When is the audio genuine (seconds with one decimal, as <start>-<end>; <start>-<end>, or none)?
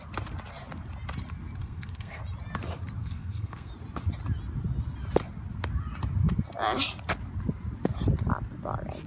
0.0-1.6; 2.2-3.0; 3.7-9.1